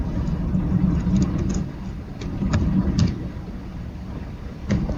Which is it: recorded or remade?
recorded